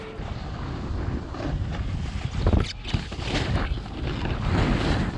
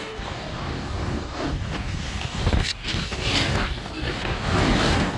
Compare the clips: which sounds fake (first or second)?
second